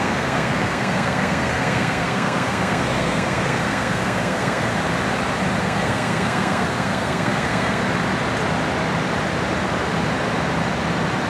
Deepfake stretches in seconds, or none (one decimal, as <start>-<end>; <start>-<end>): 0.0-4.7; 5.6-7.8